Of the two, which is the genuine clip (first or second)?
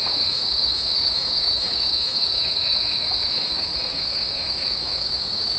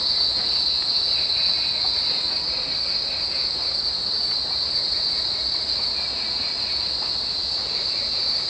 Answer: second